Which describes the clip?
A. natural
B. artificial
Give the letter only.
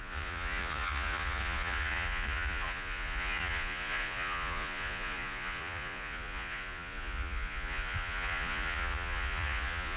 B